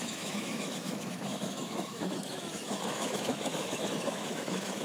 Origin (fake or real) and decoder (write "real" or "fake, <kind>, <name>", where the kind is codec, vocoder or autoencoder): fake, autoencoder, DAC-VAE